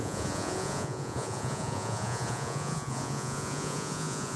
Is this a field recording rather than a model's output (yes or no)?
no